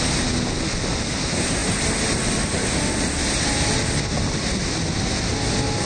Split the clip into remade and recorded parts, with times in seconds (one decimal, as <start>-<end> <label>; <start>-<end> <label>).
0.0-5.9 recorded